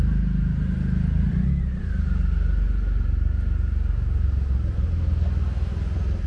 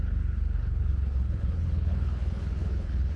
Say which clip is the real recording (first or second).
first